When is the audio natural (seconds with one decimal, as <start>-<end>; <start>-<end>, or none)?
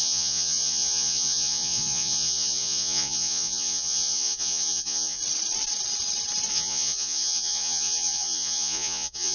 5.2-6.5